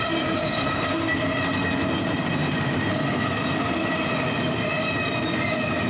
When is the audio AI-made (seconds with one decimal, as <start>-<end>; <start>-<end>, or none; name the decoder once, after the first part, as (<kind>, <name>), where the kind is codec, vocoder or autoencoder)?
none